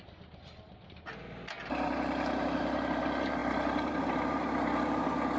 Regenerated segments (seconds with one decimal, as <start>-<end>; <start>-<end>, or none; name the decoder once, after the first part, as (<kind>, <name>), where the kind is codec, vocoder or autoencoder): none

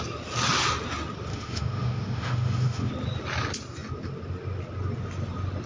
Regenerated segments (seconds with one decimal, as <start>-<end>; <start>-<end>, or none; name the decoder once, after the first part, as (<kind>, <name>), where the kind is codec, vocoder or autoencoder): 1.3-2.9 (autoencoder, DAC-VAE)

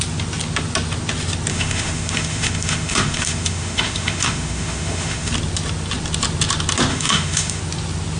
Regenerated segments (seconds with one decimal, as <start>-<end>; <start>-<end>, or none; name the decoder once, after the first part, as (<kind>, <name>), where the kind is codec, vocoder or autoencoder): 1.5-5.3 (autoencoder, DAC-VAE); 6.9-7.6

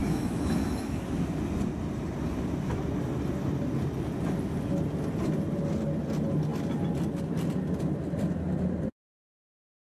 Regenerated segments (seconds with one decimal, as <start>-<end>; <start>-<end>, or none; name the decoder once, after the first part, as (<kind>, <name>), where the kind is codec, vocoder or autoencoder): 0.0-1.2 (autoencoder, DAC-VAE)

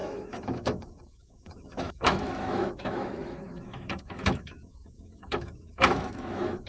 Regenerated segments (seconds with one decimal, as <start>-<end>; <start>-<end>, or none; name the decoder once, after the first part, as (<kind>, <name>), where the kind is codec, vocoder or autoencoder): 0.0-6.7 (autoencoder, DAC-VAE)